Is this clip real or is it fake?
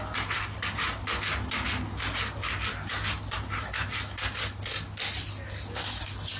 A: real